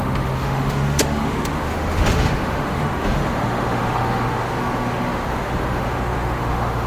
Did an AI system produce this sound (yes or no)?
yes